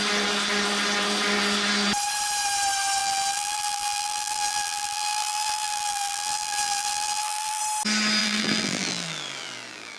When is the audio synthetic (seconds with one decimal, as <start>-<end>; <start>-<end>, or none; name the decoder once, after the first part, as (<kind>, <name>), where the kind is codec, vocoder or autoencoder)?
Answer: 3.0-7.6 (vocoder, BigVGAN v2); 8.2-10.0